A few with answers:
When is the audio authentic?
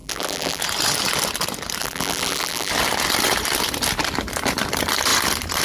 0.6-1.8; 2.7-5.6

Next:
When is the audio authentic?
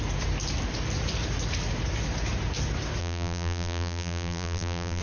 0.0-3.0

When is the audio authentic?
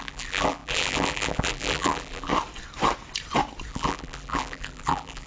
2.3-3.7